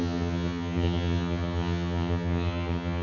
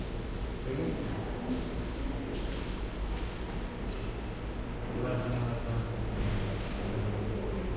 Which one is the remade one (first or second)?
first